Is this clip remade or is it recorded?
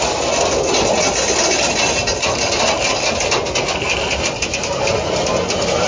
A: recorded